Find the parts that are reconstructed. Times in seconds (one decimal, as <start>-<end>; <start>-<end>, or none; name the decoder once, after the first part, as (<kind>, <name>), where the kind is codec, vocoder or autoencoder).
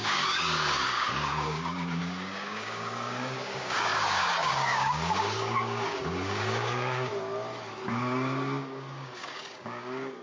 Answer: 0.0-7.1 (codec, DAC); 7.9-10.2